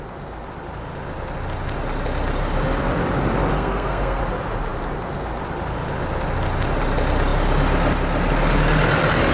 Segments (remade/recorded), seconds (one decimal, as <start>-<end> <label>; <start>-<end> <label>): 0.0-3.5 recorded; 3.5-4.2 remade; 4.2-9.3 recorded